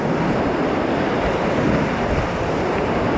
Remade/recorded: recorded